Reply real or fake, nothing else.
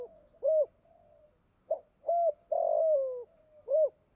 real